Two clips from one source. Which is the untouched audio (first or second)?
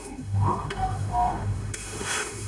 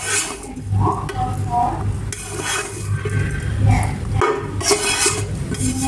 second